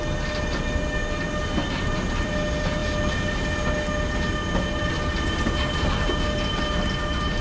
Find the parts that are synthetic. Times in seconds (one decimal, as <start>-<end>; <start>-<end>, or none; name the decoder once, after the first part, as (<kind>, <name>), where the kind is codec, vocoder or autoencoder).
1.6-2.3 (vocoder, BigVGAN v2)